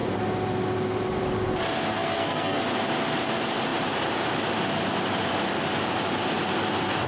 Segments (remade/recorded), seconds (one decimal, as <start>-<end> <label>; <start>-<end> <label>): 0.0-1.9 recorded; 1.9-2.6 remade; 2.6-7.1 recorded